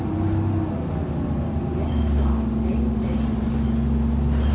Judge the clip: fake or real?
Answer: real